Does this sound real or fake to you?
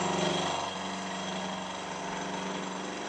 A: real